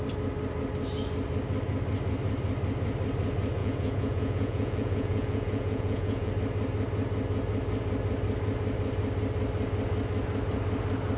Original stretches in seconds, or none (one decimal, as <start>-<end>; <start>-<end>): 0.0-3.6; 6.3-11.2

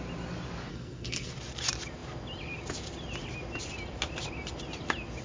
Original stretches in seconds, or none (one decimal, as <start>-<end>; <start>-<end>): 0.0-0.7; 1.3-5.2

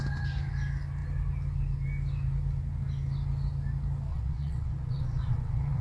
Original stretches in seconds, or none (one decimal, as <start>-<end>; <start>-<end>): 0.0-4.1